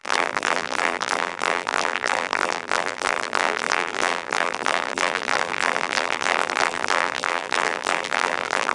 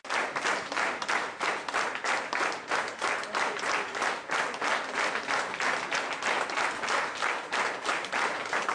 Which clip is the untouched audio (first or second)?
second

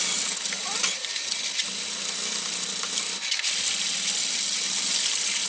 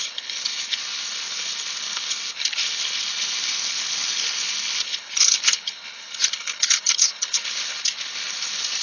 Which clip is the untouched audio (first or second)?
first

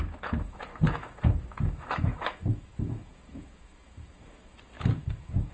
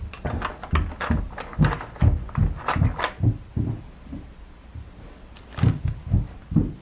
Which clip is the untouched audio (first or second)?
second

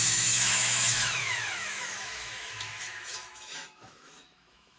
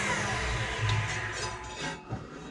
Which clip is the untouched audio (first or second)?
second